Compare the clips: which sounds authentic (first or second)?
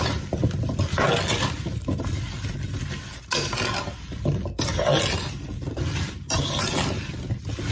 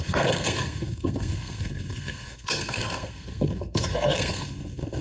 first